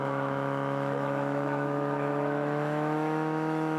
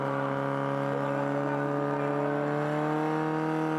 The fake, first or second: first